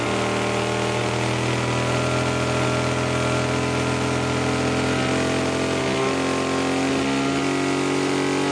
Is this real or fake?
real